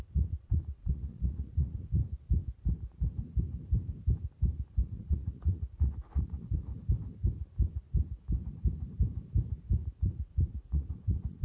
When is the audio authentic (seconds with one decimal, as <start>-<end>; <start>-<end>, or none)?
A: 2.0-4.8; 6.7-10.0